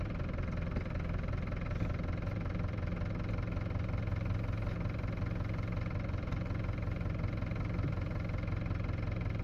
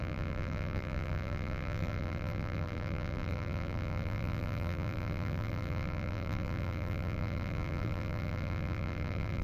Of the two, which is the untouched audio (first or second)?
first